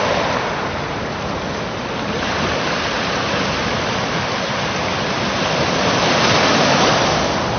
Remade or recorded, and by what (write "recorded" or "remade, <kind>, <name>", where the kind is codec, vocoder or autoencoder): remade, vocoder, BigVGAN v2